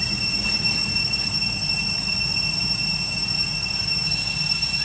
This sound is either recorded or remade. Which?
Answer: recorded